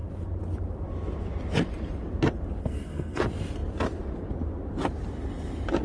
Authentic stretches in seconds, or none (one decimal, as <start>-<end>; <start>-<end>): 0.0-2.6; 3.2-5.8